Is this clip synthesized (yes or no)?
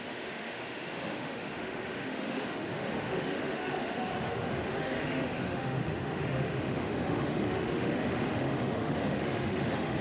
yes